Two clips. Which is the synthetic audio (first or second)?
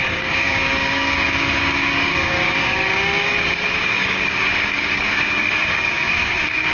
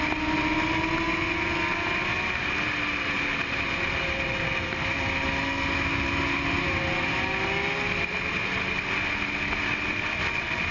first